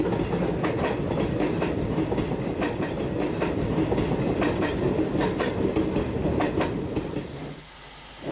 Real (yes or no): yes